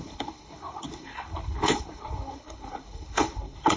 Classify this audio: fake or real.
fake